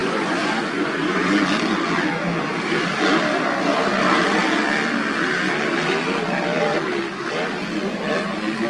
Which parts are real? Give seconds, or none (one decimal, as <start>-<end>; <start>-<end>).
1.3-8.7